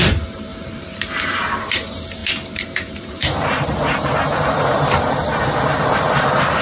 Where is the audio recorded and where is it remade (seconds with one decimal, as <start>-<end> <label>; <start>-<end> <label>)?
0.0-0.5 remade; 0.5-1.4 recorded; 1.4-6.6 remade